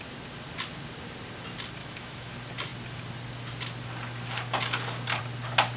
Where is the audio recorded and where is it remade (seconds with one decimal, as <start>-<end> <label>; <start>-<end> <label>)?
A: 0.0-1.8 recorded; 1.8-2.3 remade; 2.3-5.8 recorded